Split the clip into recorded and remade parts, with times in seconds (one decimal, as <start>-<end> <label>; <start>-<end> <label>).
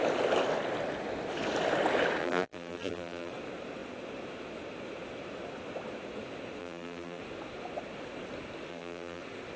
0.0-2.2 recorded; 2.2-3.3 remade; 3.3-6.6 recorded; 6.6-7.2 remade; 7.2-8.7 recorded; 8.7-9.2 remade; 9.2-9.6 recorded